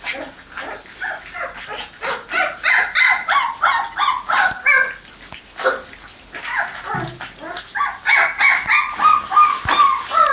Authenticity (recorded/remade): recorded